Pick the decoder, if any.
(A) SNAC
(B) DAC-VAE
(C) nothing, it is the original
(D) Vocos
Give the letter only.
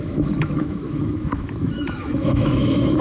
B